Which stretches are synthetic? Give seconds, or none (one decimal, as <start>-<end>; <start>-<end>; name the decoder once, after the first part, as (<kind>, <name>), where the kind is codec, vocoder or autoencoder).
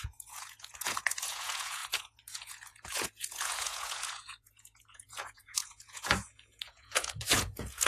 0.0-7.9 (vocoder, Vocos)